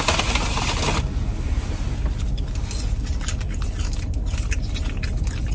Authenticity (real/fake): real